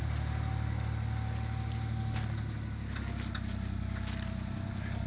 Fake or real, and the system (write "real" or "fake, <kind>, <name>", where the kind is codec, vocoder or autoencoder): real